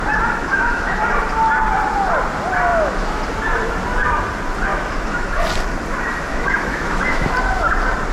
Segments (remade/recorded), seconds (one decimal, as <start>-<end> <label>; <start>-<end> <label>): 0.0-0.4 recorded; 0.4-1.0 remade; 1.0-2.7 recorded; 2.7-3.2 remade; 3.2-4.7 recorded; 4.7-5.3 remade; 5.3-6.3 recorded; 6.3-7.3 remade; 7.3-8.1 recorded